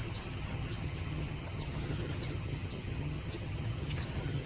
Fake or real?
fake